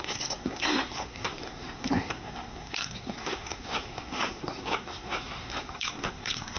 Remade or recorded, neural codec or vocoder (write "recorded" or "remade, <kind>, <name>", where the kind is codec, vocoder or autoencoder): remade, codec, SNAC